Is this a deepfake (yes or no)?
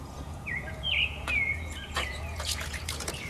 yes